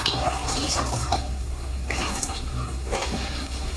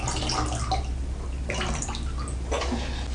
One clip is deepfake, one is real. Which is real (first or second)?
second